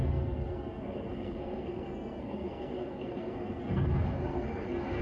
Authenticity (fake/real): fake